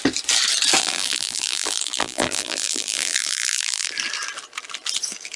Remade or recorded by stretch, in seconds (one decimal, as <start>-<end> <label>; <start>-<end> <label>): 0.0-0.8 recorded; 0.8-3.9 remade; 3.9-5.4 recorded